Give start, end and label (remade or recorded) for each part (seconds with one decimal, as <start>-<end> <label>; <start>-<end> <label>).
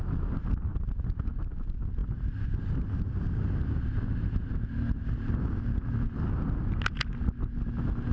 0.0-8.1 recorded